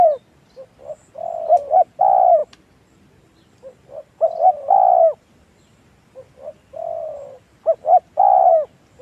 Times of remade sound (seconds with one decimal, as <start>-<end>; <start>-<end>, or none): 2.4-4.5